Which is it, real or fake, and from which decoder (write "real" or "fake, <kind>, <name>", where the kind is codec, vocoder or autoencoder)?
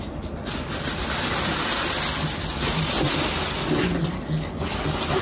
real